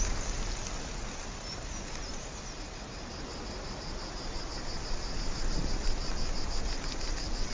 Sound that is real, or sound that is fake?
real